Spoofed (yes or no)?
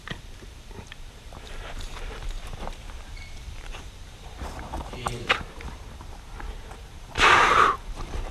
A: yes